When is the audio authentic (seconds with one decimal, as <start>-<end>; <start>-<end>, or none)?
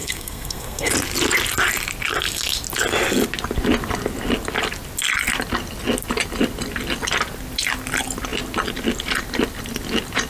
0.9-10.3